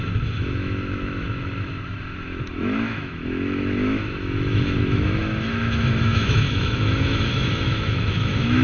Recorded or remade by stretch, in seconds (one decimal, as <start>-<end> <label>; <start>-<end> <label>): 0.0-8.6 remade